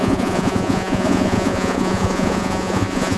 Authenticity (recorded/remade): remade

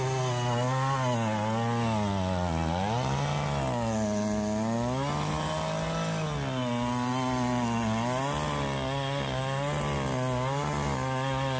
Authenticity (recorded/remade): recorded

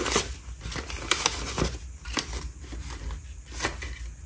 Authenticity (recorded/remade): recorded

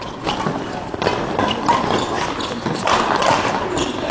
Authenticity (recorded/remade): recorded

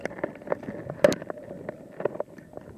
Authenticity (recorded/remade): recorded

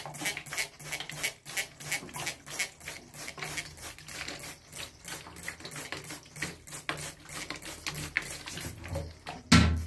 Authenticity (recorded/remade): recorded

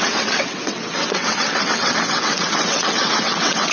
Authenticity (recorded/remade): remade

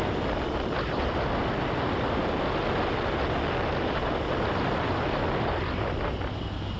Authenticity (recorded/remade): recorded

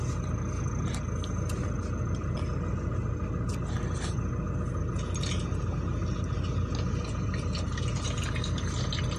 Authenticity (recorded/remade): recorded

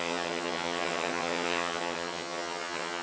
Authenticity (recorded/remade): remade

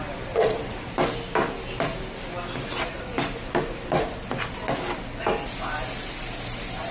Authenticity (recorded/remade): recorded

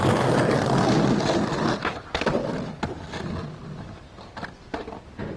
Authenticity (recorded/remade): recorded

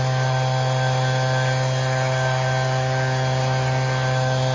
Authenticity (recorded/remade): recorded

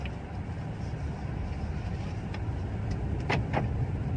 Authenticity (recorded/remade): recorded